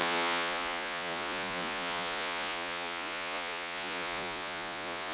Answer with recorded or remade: remade